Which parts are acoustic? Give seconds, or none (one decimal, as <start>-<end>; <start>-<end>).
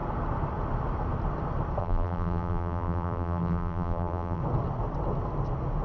0.0-1.8; 4.4-5.8